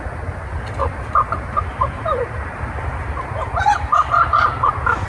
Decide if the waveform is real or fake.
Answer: real